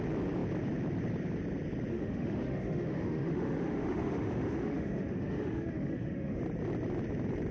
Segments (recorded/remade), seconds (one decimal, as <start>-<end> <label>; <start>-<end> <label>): 0.0-1.9 recorded; 1.9-6.4 remade; 6.4-7.5 recorded